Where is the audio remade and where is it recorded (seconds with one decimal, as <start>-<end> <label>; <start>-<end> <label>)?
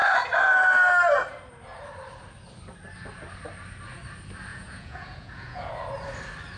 0.0-4.5 recorded; 4.5-5.7 remade; 5.7-6.6 recorded